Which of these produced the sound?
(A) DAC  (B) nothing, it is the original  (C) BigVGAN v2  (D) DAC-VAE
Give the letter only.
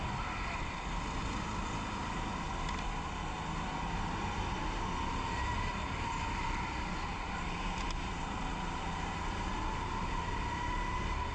B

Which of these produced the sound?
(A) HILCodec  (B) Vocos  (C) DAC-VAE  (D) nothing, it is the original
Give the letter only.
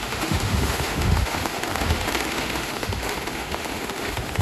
C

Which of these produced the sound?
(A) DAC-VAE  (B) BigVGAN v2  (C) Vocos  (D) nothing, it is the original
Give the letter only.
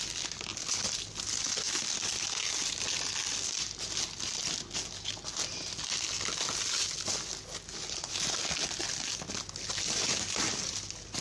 D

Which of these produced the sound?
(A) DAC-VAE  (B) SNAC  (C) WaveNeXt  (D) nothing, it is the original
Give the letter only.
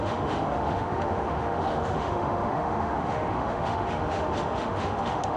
A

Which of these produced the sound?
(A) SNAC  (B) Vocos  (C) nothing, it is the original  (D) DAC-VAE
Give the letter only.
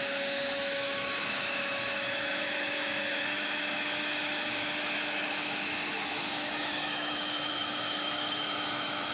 D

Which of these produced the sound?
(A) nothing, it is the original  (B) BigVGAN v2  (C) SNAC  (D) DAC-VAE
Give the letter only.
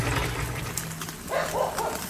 A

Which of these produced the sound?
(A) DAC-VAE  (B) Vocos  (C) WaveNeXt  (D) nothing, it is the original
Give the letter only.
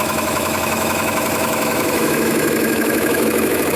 A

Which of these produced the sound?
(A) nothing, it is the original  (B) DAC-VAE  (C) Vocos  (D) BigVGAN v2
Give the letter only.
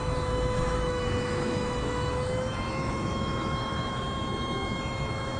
B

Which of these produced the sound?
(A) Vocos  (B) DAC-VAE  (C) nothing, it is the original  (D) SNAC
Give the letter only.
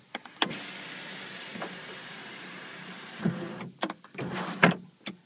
C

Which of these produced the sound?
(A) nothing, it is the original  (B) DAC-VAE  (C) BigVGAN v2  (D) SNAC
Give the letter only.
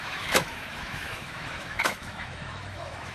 B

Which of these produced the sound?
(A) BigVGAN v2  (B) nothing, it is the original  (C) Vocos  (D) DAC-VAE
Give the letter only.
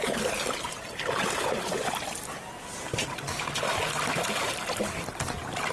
B